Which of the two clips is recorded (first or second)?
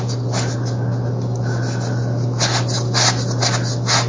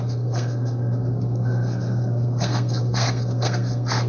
first